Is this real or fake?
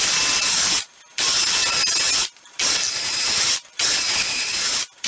real